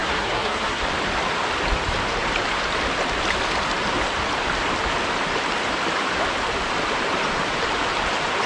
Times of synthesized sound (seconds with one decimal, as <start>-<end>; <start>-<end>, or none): 0.0-0.8